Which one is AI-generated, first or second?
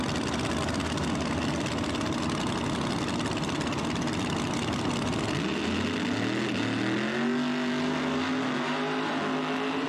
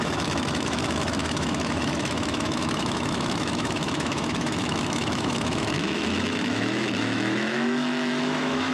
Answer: second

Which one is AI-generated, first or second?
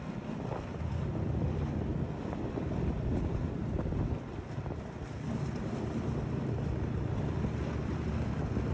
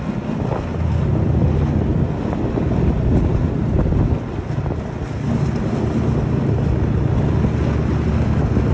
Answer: first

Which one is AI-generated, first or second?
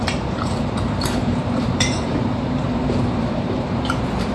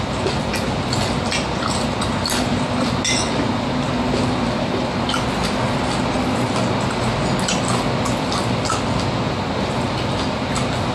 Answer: first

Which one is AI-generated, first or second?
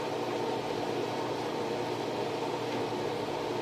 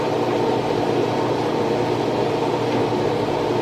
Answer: second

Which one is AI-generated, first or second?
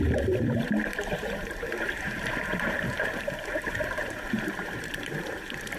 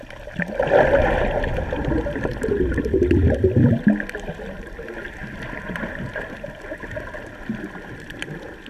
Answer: first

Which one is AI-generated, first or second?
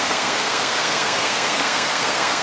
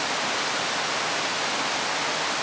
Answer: first